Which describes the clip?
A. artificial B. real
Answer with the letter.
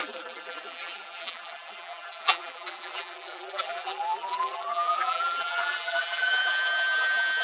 A